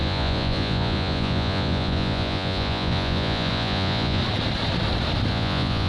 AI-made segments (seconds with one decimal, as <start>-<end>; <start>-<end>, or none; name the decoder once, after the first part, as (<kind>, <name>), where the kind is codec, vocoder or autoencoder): 0.0-4.2 (vocoder, Vocos); 5.3-5.9